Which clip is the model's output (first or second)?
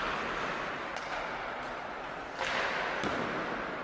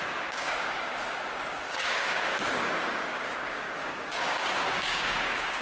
second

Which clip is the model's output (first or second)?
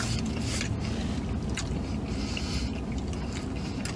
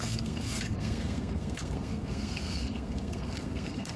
second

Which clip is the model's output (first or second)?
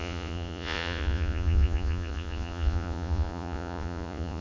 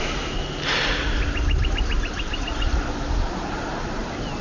first